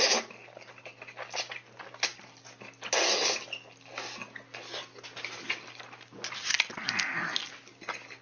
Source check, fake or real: real